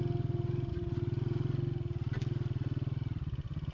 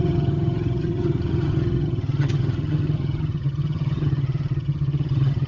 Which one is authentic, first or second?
first